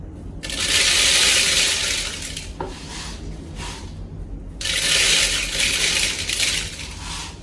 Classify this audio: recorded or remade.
recorded